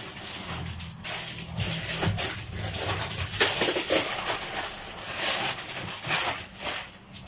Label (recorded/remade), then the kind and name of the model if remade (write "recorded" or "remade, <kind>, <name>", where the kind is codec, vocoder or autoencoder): recorded